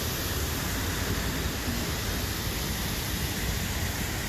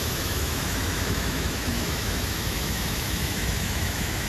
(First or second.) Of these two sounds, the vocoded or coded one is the second